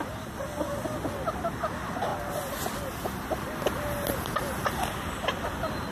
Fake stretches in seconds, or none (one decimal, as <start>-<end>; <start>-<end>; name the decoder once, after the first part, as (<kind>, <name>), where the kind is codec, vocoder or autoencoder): none